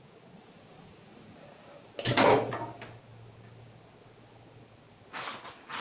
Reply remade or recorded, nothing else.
recorded